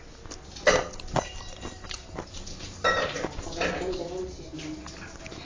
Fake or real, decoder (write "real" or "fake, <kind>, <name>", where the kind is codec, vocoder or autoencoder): real